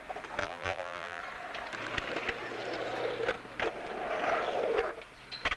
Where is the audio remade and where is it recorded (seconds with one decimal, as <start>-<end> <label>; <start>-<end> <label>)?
0.0-0.4 recorded; 0.4-1.2 remade; 1.2-5.6 recorded